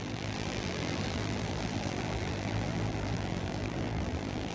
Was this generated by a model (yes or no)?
yes